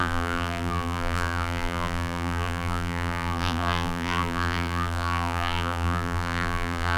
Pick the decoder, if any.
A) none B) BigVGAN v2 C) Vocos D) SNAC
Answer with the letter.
B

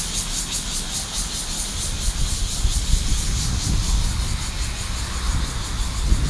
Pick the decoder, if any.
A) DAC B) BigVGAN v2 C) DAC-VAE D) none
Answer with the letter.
D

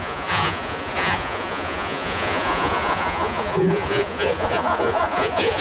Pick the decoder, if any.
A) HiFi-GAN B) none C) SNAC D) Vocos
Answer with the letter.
D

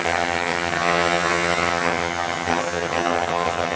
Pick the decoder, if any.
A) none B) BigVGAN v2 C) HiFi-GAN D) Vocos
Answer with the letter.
C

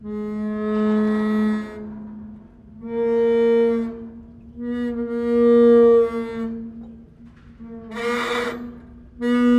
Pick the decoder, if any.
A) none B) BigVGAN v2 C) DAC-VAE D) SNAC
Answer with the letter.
A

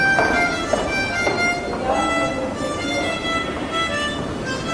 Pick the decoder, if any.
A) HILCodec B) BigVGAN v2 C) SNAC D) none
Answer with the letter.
D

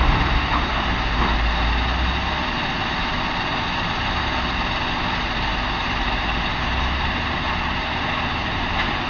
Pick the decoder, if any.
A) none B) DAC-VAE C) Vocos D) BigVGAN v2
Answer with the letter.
A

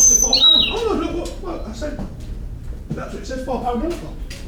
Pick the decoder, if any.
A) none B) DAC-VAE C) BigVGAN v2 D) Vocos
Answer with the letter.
A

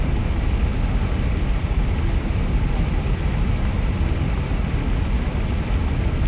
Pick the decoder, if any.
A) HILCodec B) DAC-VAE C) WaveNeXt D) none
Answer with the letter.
D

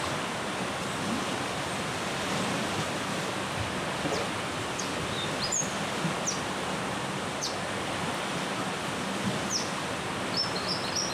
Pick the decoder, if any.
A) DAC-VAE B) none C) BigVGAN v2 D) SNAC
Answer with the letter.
B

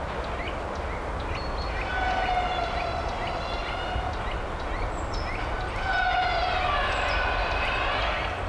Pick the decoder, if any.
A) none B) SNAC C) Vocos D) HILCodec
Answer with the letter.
A